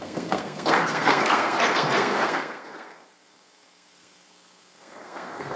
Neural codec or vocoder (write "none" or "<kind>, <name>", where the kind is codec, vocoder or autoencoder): codec, SNAC